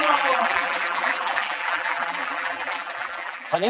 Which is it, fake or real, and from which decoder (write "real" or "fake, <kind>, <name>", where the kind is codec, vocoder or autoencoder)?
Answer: fake, vocoder, BigVGAN v2